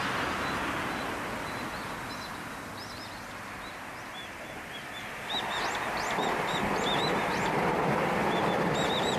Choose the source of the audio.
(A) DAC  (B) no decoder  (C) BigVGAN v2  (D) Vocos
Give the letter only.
B